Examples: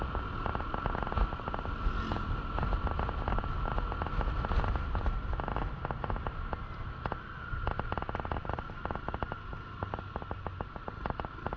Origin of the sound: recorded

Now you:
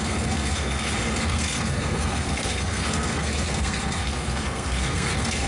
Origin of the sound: remade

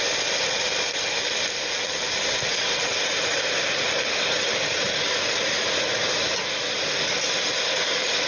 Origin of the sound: recorded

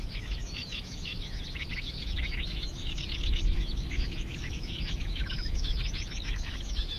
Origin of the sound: remade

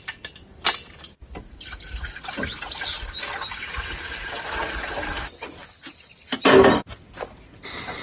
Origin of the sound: recorded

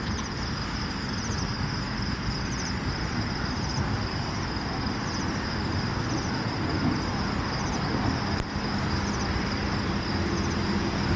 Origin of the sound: recorded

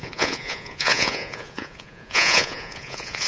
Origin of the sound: remade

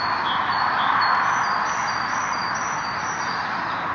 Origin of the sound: recorded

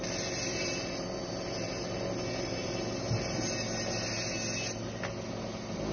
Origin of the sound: recorded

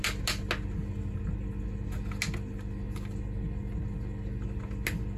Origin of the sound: recorded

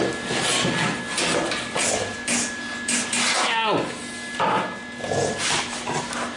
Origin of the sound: recorded